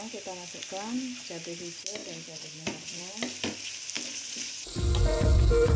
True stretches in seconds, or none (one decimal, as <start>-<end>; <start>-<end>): 0.0-2.0; 3.0-4.1